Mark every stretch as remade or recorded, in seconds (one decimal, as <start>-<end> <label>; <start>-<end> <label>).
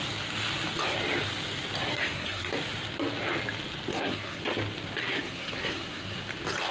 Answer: 0.0-1.9 recorded; 1.9-2.5 remade; 2.5-3.9 recorded; 3.9-4.4 remade; 4.4-5.0 recorded; 5.0-6.2 remade; 6.2-6.7 recorded